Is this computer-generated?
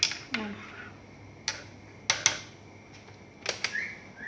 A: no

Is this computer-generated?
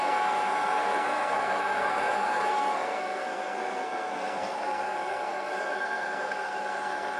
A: yes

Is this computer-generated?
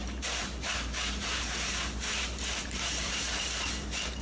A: yes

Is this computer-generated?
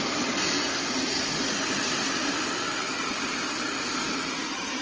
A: no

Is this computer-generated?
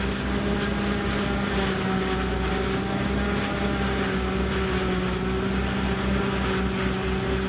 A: no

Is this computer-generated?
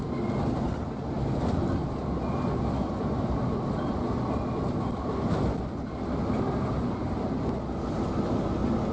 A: no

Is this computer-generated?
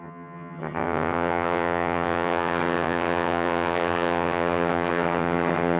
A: yes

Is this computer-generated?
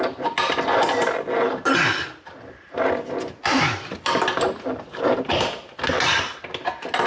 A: no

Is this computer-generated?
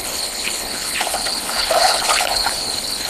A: yes